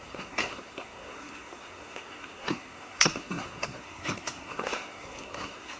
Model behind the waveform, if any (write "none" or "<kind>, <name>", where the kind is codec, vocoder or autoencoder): codec, SNAC